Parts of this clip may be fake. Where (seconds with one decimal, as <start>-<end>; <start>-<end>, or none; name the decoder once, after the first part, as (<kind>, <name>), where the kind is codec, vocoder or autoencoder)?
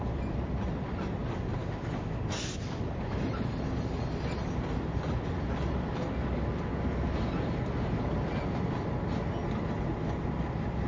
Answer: 1.6-2.2 (autoencoder, DAC-VAE)